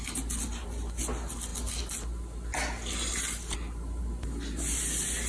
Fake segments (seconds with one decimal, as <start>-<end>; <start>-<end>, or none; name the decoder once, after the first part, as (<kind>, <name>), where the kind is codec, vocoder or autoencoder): none